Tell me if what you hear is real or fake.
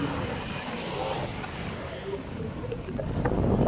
real